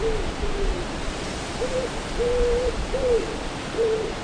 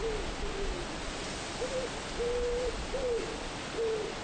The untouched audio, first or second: second